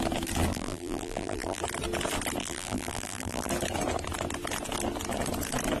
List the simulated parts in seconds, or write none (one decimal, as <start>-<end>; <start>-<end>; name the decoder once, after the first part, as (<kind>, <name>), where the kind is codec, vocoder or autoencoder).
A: 0.5-1.6 (vocoder, BigVGAN v2); 2.4-3.5